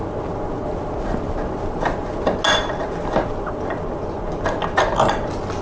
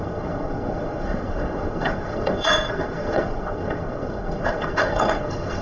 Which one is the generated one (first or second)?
second